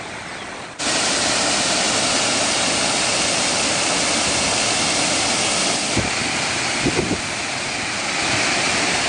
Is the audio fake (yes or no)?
no